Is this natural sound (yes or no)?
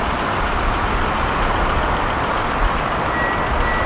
yes